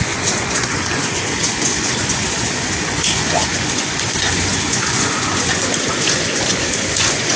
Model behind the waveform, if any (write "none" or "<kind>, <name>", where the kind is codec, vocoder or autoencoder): vocoder, Vocos